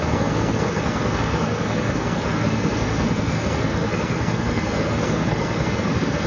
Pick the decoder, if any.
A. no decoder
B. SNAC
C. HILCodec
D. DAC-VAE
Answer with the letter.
B